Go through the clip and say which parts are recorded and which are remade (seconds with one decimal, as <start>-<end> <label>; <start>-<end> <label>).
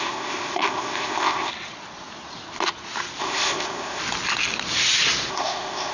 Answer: 0.0-1.5 remade; 1.5-3.2 recorded; 3.2-4.0 remade; 4.0-5.3 recorded; 5.3-5.9 remade